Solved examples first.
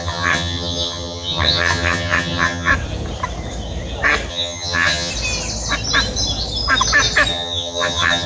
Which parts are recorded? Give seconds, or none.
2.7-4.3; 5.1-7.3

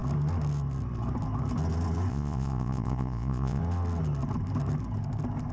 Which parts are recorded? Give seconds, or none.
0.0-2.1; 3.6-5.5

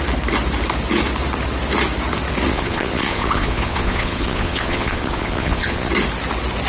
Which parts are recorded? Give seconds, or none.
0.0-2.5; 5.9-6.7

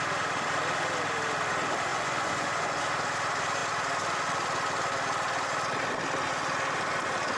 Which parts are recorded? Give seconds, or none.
0.0-1.9; 2.8-7.4

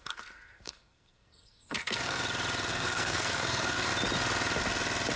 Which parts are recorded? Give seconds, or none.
2.2-2.7; 3.9-5.2

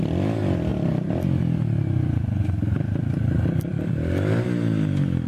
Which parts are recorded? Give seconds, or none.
0.0-5.3

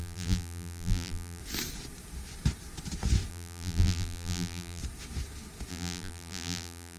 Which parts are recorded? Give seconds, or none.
1.4-3.3; 4.8-5.7